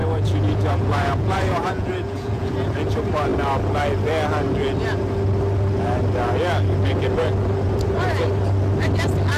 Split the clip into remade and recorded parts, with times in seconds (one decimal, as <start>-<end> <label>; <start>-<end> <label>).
0.0-2.5 remade; 2.5-9.4 recorded